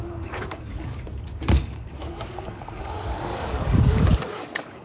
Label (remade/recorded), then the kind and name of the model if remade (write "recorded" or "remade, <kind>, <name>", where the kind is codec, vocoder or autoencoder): remade, codec, DAC